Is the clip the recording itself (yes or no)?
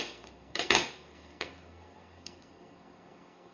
no